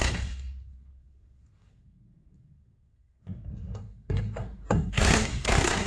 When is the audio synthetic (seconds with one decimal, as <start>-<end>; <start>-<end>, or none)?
0.0-5.9